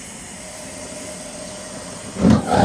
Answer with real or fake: real